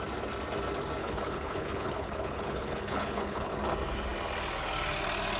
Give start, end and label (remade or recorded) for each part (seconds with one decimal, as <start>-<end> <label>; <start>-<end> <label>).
0.0-1.0 recorded; 1.0-3.5 remade; 3.5-5.4 recorded